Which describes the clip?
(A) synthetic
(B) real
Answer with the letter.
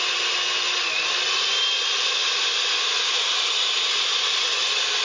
B